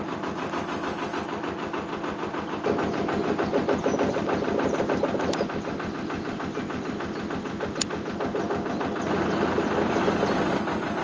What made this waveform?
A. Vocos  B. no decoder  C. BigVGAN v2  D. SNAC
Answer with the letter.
B